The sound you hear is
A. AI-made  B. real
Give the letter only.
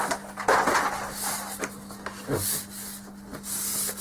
B